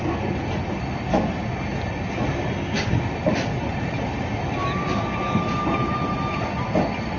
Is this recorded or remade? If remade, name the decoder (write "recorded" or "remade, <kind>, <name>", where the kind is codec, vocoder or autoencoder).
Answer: recorded